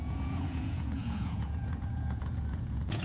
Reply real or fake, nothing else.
fake